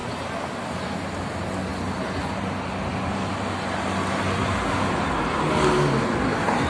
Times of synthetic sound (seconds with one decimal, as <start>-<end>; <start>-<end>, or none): none